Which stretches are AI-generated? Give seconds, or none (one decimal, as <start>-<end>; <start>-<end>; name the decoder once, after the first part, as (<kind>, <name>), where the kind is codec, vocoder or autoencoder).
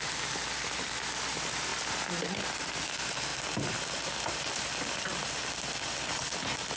none